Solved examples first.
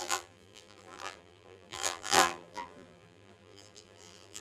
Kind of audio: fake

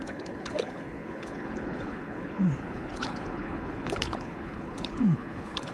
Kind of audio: fake